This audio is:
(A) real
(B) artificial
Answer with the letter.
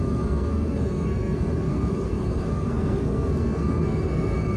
B